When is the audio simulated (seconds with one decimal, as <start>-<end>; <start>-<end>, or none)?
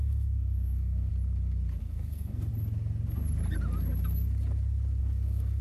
0.0-1.1; 1.8-2.5; 5.0-5.6